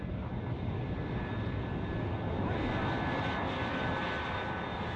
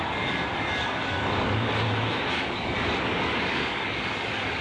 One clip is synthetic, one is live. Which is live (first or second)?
first